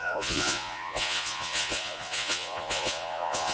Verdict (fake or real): fake